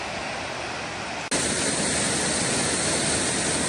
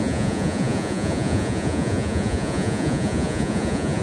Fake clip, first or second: second